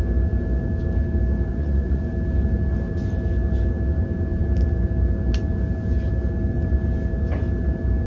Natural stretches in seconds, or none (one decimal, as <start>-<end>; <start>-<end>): 0.0-1.5; 2.0-8.1